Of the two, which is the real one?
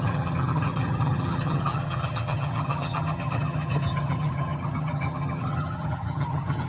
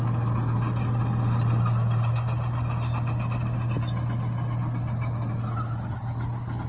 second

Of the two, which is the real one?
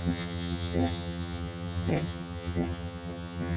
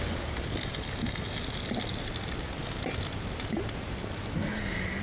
second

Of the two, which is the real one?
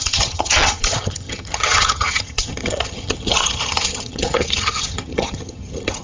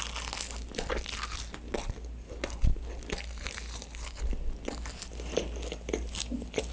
second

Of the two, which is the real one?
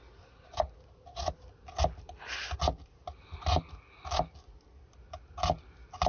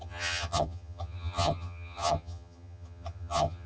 first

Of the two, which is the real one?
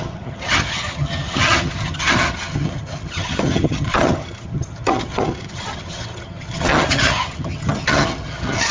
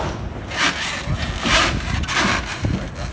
second